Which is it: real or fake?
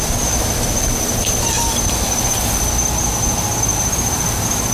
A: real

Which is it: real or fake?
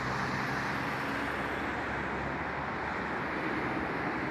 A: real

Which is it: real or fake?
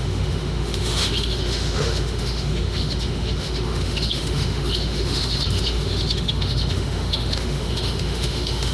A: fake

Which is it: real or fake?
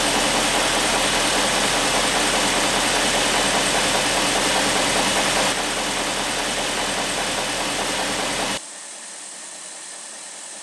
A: real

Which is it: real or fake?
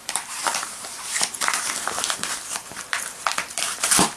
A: fake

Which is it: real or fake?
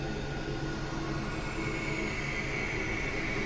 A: real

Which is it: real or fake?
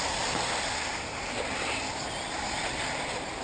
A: real